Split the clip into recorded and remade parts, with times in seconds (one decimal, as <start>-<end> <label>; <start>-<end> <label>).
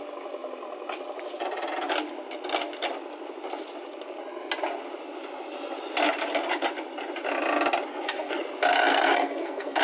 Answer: 0.0-7.9 recorded; 7.9-8.4 remade; 8.4-8.9 recorded; 8.9-9.8 remade